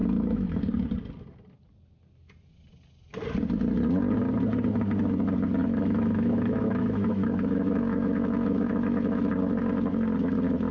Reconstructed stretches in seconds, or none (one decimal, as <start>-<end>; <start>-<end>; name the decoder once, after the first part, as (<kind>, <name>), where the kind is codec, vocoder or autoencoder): 0.0-0.6 (autoencoder, DAC-VAE); 5.6-9.3